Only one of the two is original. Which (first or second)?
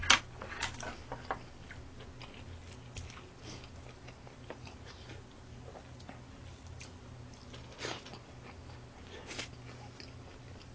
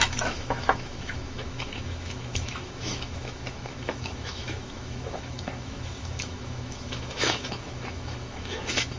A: first